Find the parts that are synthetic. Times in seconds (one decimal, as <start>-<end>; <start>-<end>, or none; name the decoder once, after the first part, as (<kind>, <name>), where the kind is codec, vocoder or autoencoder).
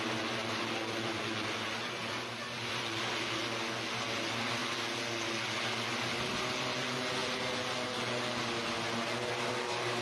0.4-3.0 (vocoder, Vocos)